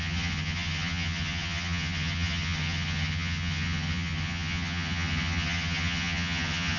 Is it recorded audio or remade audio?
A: remade